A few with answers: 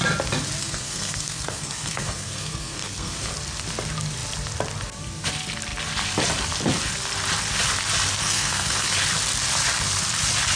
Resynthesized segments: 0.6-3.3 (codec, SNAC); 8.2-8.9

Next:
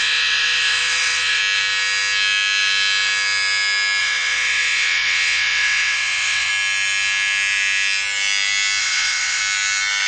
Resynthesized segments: 0.0-1.4 (vocoder, WaveNeXt); 4.0-6.5; 8.8-9.4

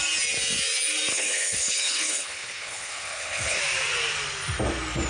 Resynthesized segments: 1.1-3.6 (codec, HILCodec)

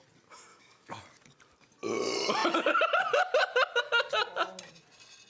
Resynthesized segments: 0.5-1.0 (autoencoder, DAC-VAE)

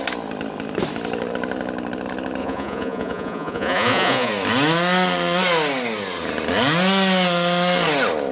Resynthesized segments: 2.4-4.3 (vocoder, Vocos)

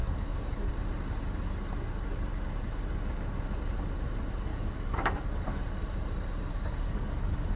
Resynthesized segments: 0.0-0.7 (codec, DAC); 4.5-5.6; 6.5-7.6